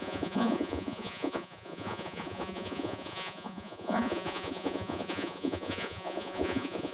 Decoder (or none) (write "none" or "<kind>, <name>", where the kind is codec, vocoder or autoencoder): vocoder, Vocos